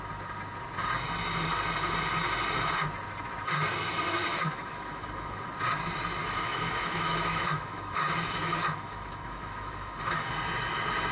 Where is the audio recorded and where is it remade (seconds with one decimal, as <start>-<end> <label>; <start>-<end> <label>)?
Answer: 0.0-4.3 recorded; 4.3-5.5 remade; 5.5-6.2 recorded; 6.2-10.3 remade; 10.3-11.1 recorded